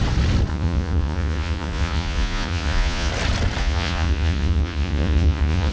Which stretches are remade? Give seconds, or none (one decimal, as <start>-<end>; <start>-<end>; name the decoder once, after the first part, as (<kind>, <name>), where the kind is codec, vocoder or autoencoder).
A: 0.5-3.1 (vocoder, Vocos); 3.6-5.7